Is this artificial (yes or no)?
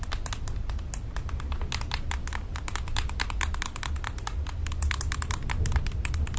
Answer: no